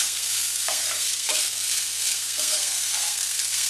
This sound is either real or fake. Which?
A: fake